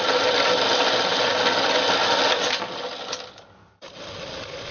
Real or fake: real